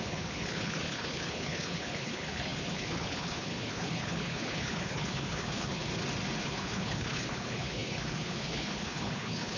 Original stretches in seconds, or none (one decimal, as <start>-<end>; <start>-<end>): 5.9-6.4